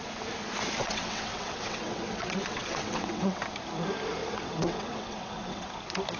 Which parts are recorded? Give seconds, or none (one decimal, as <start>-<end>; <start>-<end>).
0.0-0.8; 3.4-4.2; 5.7-6.2